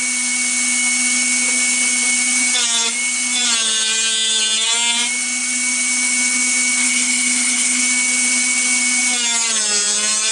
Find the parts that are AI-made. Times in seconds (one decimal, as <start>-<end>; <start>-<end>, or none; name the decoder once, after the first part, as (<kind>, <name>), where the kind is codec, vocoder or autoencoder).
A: 6.8-7.8 (codec, HILCodec)